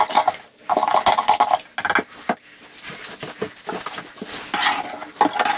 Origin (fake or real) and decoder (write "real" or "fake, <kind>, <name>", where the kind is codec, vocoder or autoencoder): real